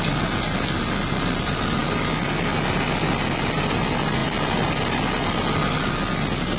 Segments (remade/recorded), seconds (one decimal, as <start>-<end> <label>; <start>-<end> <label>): 0.0-6.6 recorded